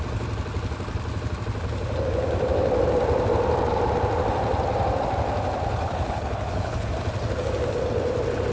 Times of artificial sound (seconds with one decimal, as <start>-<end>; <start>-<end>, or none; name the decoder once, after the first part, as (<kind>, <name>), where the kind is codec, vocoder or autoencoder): 5.6-6.9 (codec, HILCodec)